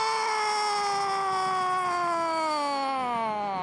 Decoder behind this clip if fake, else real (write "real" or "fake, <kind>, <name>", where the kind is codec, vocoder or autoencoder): real